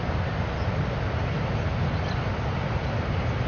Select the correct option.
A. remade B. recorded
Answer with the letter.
B